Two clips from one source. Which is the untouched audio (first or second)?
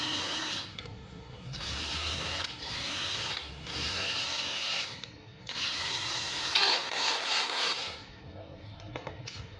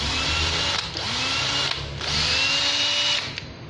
second